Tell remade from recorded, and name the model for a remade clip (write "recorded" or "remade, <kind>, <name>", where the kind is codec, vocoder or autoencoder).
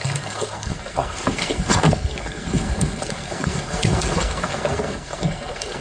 remade, codec, SNAC